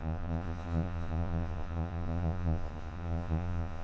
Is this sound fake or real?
fake